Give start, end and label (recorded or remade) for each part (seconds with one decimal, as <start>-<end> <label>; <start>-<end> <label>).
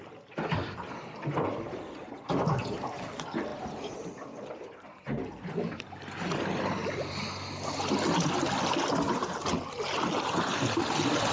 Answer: 0.0-11.3 recorded